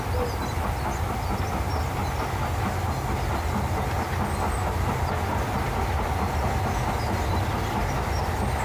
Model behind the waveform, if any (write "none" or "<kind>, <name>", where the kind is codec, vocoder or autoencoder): none